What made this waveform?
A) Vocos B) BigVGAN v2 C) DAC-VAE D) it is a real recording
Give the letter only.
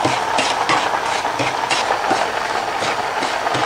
D